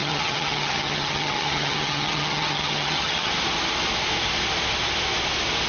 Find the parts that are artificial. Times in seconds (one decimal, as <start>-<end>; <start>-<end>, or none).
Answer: 0.0-3.3